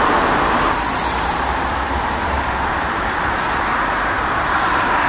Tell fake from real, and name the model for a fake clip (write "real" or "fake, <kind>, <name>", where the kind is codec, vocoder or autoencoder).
fake, vocoder, BigVGAN v2